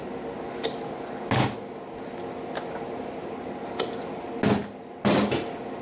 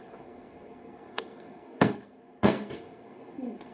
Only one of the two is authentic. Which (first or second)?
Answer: first